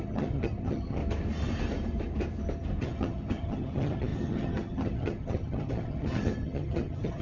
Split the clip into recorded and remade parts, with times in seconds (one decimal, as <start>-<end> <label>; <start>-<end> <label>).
0.0-1.0 remade; 1.0-2.8 recorded; 2.8-7.2 remade